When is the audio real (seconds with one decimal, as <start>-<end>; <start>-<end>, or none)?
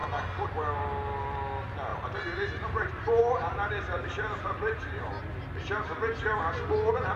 0.0-1.9; 5.1-7.2